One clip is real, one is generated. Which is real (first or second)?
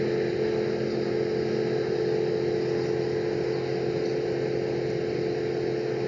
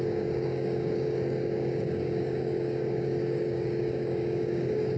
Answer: first